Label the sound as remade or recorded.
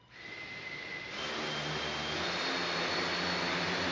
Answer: recorded